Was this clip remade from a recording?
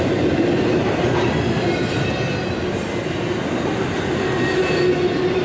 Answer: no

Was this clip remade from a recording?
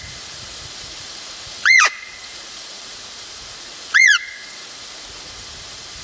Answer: yes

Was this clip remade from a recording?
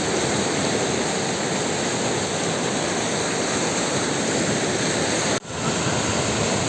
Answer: no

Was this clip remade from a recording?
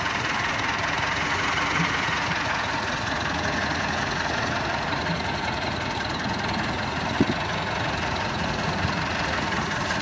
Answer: yes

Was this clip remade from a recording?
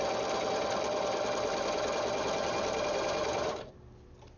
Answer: no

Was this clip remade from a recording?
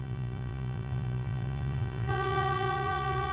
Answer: yes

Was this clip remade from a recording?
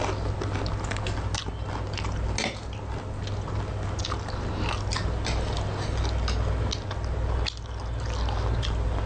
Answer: no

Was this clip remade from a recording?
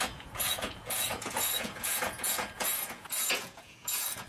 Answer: yes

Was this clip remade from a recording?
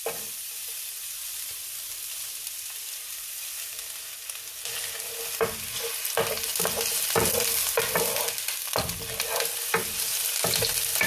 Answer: no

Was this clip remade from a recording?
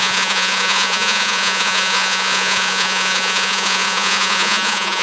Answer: yes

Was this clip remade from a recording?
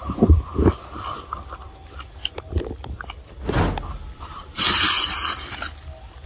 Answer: no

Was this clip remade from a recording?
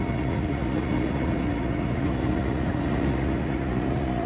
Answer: yes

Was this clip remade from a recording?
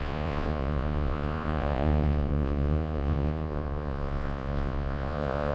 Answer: yes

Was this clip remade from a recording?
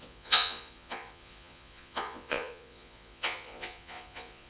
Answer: yes